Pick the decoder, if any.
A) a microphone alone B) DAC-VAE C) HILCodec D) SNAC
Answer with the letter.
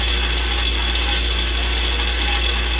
A